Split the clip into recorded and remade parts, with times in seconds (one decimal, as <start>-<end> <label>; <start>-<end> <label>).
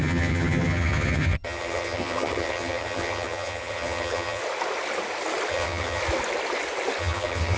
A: 0.0-4.4 remade; 4.4-5.5 recorded; 5.5-6.0 remade; 6.0-7.0 recorded; 7.0-7.6 remade